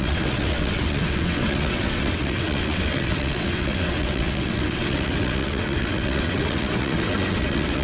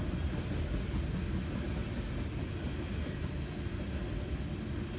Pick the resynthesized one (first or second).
first